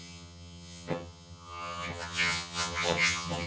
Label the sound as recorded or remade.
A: remade